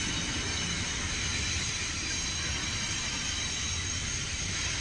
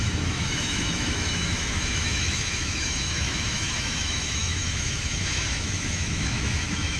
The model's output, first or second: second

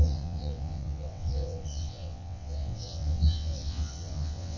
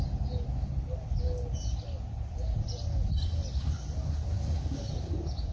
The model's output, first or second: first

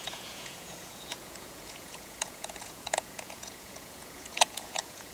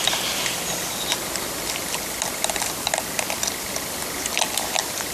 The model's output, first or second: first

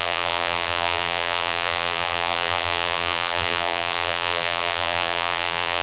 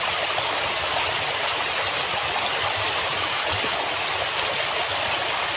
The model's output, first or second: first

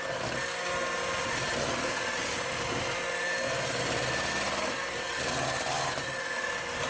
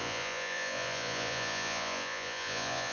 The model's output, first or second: second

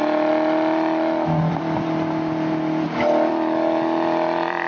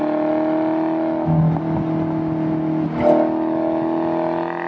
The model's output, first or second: first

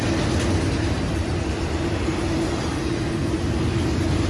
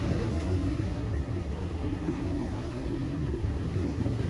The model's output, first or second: second